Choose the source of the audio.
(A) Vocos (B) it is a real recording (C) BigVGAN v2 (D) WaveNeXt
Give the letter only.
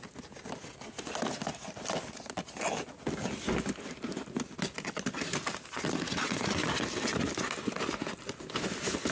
B